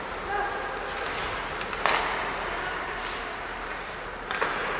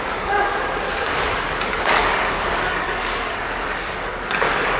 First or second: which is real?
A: first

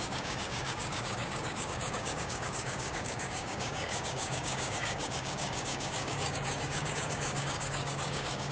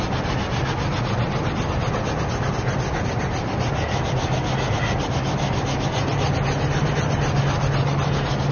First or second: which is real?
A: second